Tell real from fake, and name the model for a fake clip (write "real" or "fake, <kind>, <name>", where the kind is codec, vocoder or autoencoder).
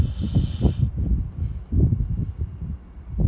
real